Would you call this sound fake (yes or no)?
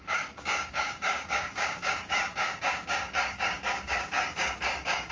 yes